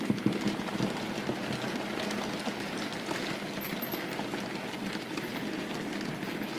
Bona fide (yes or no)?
yes